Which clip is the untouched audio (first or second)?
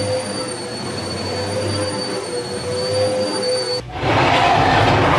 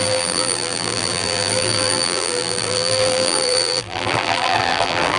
first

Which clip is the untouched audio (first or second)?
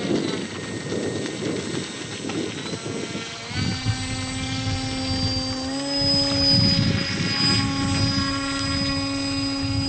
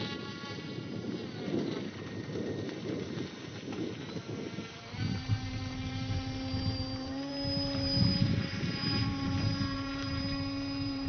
first